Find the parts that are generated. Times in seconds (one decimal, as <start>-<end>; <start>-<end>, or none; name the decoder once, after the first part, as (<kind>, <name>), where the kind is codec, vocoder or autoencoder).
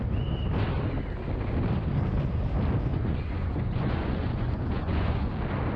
2.9-5.3 (vocoder, Vocos)